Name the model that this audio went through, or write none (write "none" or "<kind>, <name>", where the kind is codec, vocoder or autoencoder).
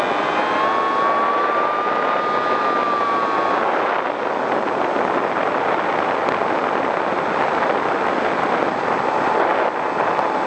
none